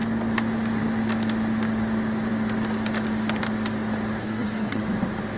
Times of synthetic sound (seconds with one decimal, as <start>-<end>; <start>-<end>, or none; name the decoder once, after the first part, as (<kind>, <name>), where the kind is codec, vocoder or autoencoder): 4.2-4.8 (codec, SNAC)